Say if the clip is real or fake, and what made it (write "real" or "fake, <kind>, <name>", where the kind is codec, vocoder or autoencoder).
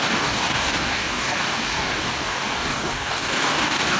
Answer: fake, codec, DAC